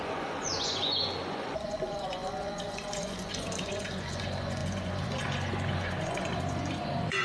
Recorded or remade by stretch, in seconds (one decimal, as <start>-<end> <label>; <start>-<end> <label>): 0.0-7.2 remade